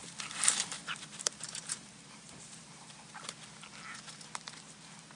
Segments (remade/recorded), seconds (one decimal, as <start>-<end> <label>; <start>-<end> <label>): 0.0-3.1 remade; 3.1-5.2 recorded